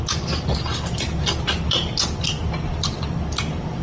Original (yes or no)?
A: yes